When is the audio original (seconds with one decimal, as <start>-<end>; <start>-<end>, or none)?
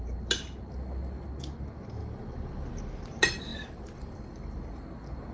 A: 0.0-2.0; 2.7-3.5; 4.3-5.3